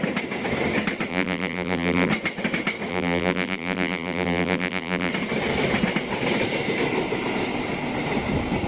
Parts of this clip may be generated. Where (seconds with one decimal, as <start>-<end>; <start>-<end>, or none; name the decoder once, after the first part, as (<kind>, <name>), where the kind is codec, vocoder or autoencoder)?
1.1-2.1 (vocoder, BigVGAN v2); 2.9-5.1

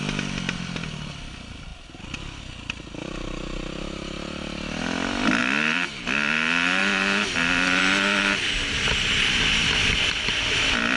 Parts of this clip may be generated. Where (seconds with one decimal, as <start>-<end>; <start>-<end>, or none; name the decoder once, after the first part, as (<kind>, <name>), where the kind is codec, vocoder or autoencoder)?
1.7-2.4 (vocoder, BigVGAN v2); 5.4-5.9; 9.6-11.0

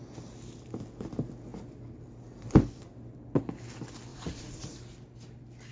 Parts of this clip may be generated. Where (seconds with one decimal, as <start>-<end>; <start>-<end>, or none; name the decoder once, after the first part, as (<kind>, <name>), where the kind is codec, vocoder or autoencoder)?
4.1-4.7 (vocoder, Vocos)

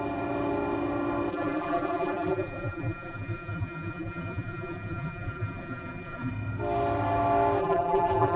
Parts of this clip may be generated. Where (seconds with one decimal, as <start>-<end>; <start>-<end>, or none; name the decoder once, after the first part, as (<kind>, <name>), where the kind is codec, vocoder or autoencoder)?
1.3-6.3 (vocoder, BigVGAN v2); 7.6-8.4

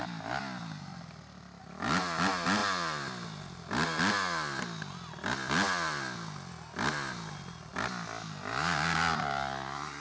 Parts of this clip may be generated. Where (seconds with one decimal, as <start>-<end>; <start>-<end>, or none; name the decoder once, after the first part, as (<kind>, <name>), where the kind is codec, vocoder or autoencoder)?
none

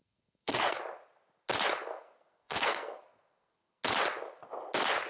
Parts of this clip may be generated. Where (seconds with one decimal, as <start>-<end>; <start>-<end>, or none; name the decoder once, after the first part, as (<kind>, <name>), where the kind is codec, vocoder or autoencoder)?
0.0-0.8 (codec, SNAC); 1.9-3.8

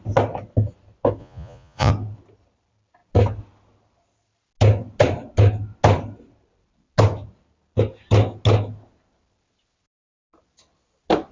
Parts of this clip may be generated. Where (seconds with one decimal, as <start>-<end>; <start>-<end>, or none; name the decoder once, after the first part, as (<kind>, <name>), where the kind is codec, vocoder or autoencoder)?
1.2-1.9 (vocoder, Vocos)